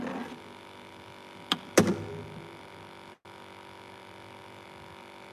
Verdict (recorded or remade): recorded